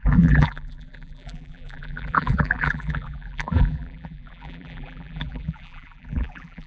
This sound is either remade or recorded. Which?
remade